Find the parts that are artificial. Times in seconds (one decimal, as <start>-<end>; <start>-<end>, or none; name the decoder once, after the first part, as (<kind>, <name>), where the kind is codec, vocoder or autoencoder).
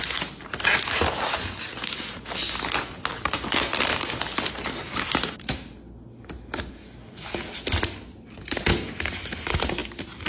none